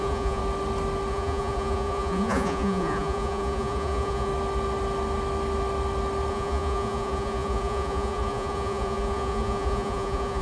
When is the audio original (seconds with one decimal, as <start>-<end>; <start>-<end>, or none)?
0.4-1.1; 4.3-6.3